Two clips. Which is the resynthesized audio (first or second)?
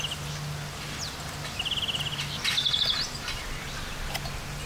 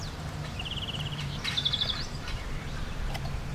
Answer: second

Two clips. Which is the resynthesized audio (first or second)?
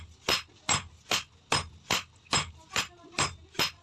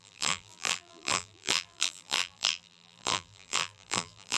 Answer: second